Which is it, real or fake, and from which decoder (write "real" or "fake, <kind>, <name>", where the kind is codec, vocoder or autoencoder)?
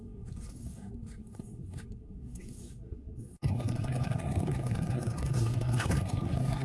fake, codec, SNAC